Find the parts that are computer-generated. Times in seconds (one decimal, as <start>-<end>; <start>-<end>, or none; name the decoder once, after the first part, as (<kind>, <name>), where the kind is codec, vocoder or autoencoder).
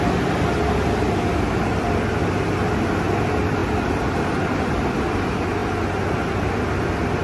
none